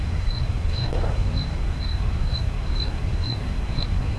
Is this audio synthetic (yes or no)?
yes